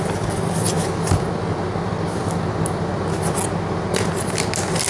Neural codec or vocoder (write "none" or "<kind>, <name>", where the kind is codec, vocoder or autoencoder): none